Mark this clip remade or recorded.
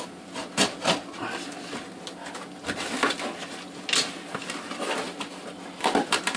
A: recorded